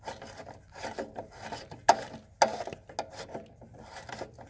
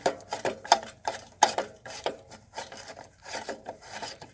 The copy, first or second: second